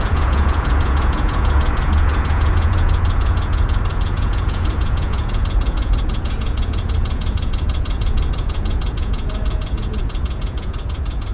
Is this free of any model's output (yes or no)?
no